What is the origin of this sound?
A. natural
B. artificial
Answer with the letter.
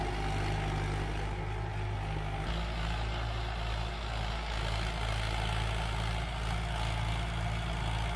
A